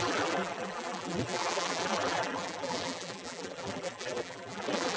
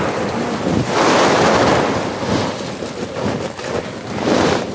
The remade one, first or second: first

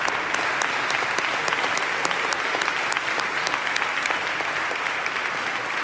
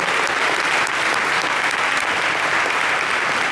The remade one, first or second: first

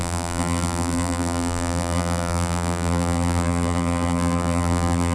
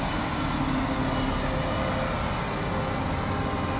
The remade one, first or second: first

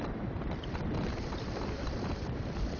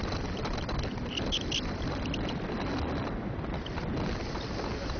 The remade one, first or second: first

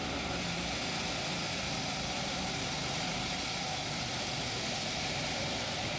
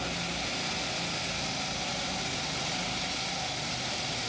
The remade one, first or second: first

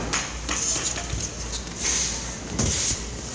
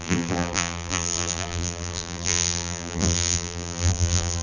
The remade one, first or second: second